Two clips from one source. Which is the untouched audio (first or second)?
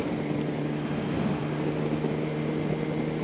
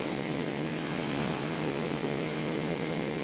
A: first